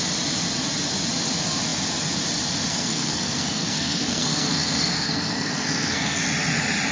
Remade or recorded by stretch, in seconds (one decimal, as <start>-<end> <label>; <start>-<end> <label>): 0.0-2.7 recorded; 2.7-6.2 remade; 6.2-6.9 recorded